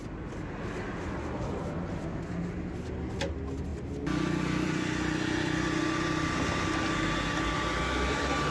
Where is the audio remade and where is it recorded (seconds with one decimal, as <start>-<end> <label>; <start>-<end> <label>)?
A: 0.0-8.5 recorded

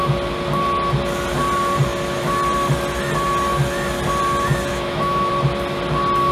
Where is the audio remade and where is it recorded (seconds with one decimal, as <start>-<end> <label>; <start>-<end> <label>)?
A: 0.0-4.7 recorded; 4.7-5.3 remade; 5.3-6.3 recorded

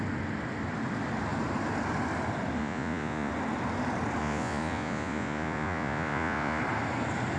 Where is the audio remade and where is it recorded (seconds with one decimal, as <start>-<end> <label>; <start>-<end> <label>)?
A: 0.0-2.6 recorded; 2.6-3.3 remade; 3.3-4.2 recorded; 4.2-6.6 remade; 6.6-7.4 recorded

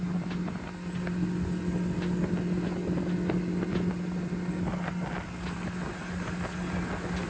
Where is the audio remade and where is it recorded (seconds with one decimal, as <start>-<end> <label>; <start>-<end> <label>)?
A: 0.0-7.3 recorded

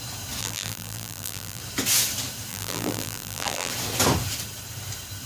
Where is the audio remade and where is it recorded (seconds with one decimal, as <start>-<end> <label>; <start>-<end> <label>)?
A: 0.0-0.4 recorded; 0.4-1.6 remade; 1.6-2.5 recorded; 2.5-3.7 remade; 3.7-5.3 recorded